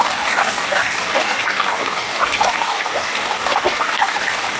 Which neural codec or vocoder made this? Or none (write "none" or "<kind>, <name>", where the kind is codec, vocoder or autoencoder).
codec, DAC